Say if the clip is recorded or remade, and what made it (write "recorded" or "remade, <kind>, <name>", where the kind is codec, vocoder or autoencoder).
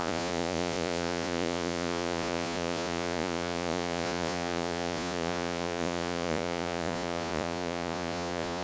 remade, vocoder, Vocos